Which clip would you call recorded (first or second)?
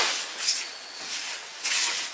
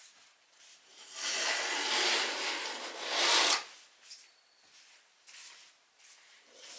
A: second